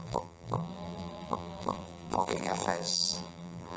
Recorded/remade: remade